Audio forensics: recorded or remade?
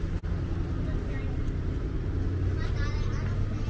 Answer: recorded